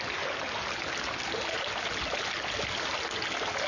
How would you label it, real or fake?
real